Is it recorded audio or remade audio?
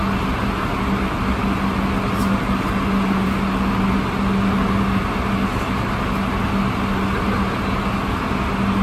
recorded